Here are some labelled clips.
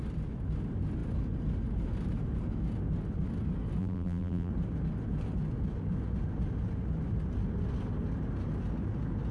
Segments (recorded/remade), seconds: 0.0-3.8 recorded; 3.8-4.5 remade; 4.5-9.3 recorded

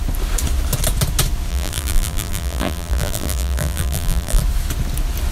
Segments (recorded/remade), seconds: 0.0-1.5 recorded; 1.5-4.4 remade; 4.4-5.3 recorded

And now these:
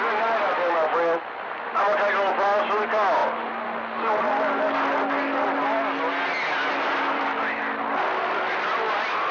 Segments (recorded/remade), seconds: 0.0-9.3 recorded

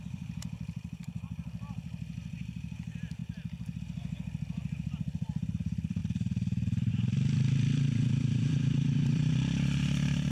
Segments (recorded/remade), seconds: 0.0-3.2 remade; 3.2-3.8 recorded; 3.8-6.0 remade; 6.0-6.9 recorded; 6.9-10.3 remade